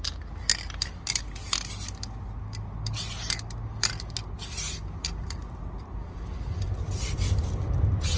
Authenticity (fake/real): real